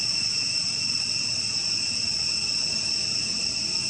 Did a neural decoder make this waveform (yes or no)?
no